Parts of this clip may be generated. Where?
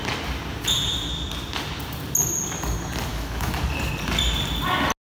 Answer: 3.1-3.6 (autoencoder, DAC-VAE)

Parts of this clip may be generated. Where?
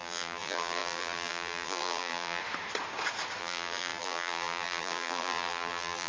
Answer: 0.0-2.4 (vocoder, BigVGAN v2); 3.4-6.1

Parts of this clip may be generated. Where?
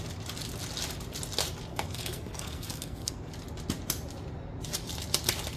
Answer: 1.7-3.3 (codec, SNAC)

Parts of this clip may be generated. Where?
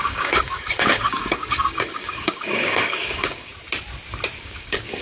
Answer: 0.0-3.5 (codec, DAC); 4.4-5.0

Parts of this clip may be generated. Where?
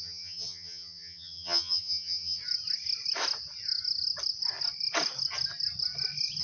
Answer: 0.0-2.4 (vocoder, HiFi-GAN)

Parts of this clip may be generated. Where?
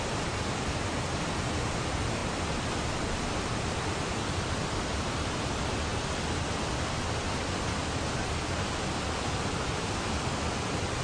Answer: none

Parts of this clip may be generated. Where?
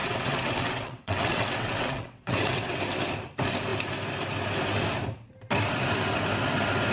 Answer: 0.0-2.8 (vocoder, WaveNeXt)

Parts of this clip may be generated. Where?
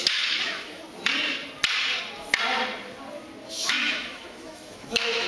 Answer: 0.0-0.8 (autoencoder, DAC-VAE); 3.5-5.3